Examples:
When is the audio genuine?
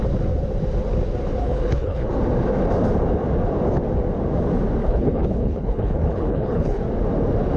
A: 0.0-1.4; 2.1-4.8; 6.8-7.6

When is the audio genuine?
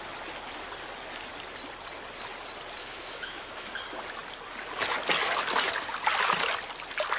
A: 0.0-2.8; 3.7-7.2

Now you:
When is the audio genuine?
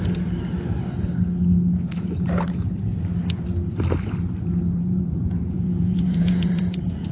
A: 0.0-4.8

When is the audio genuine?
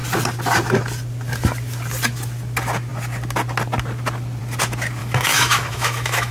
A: 0.0-5.0